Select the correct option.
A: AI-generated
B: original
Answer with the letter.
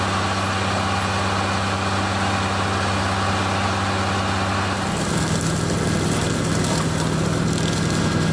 B